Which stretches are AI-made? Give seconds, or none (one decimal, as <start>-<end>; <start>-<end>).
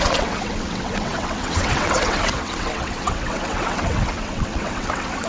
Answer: 0.0-5.3